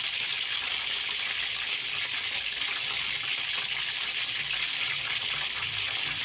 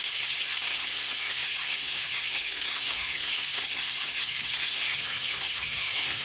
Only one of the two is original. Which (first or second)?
first